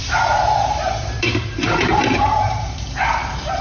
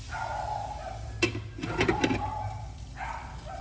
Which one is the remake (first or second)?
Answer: first